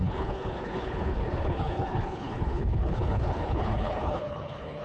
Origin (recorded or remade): remade